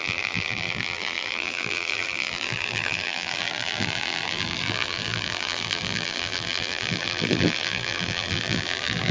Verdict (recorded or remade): remade